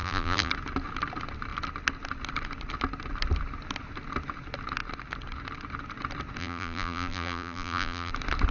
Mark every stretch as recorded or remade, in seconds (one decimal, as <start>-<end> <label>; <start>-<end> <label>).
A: 0.0-0.5 remade; 0.5-6.4 recorded; 6.4-8.1 remade; 8.1-8.5 recorded